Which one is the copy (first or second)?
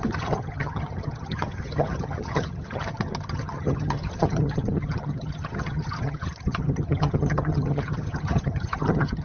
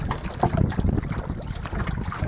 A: first